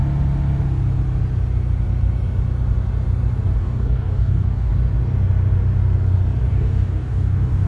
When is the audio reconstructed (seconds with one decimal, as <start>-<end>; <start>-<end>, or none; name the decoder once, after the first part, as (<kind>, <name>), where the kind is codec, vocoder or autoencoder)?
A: 3.6-4.7 (codec, DAC); 6.5-7.7